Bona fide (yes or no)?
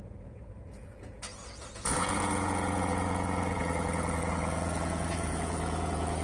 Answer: no